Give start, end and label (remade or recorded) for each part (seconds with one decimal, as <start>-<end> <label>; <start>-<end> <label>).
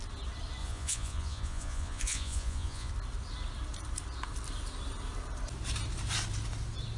0.0-0.6 recorded; 0.6-2.9 remade; 2.9-7.0 recorded